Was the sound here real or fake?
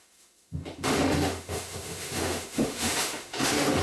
fake